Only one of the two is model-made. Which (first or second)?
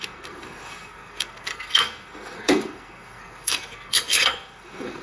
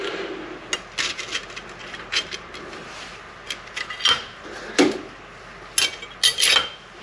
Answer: first